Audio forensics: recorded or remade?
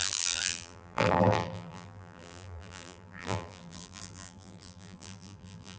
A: remade